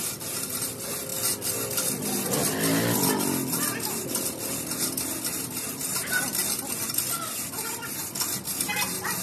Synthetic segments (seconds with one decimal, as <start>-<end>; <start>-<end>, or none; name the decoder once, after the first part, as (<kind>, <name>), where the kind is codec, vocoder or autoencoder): none

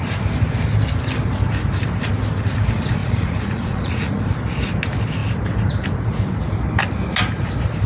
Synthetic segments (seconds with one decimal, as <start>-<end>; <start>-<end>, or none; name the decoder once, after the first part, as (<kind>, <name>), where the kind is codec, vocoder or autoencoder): 3.0-4.2 (vocoder, Vocos)

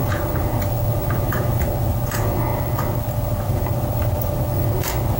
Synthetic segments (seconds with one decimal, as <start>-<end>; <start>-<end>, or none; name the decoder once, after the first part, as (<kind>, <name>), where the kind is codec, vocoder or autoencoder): 0.0-5.2 (vocoder, Vocos)